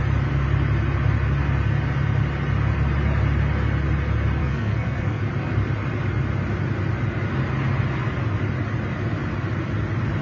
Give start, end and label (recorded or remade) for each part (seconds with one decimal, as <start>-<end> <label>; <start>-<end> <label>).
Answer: 0.0-4.4 recorded; 4.4-5.2 remade; 5.2-10.2 recorded